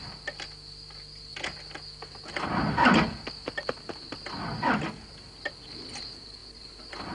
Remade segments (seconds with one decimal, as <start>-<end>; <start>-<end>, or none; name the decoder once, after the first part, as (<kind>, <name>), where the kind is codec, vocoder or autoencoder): none